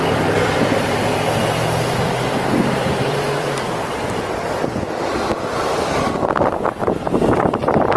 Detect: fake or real fake